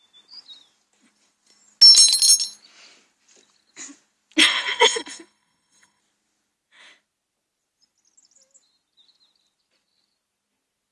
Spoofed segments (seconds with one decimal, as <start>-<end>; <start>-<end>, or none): 4.4-6.0